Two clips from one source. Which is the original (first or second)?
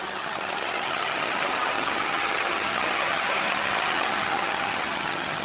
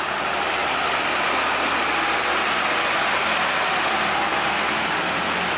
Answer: second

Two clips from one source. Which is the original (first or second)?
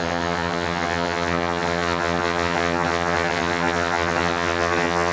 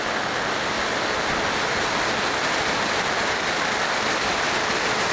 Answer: second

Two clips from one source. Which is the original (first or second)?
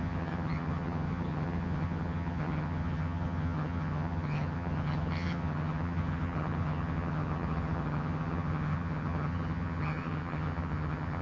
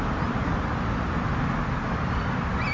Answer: second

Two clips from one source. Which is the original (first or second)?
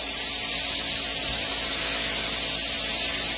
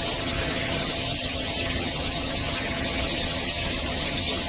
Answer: first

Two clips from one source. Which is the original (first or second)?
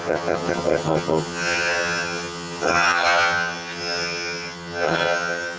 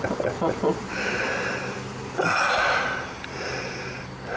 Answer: second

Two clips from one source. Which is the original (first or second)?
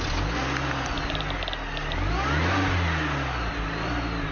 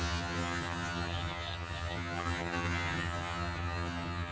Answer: first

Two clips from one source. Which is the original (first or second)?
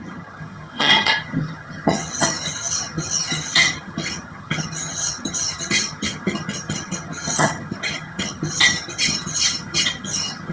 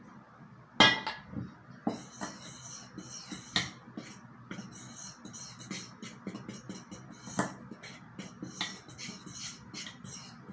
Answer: second